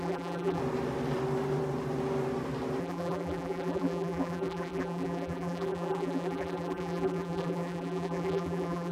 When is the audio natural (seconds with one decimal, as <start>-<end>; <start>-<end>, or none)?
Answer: 0.6-2.8